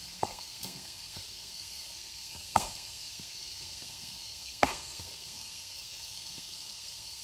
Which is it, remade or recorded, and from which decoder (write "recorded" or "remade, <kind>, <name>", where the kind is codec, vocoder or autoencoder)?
remade, codec, SNAC